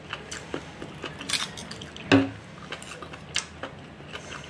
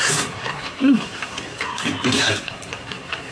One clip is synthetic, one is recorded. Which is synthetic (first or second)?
second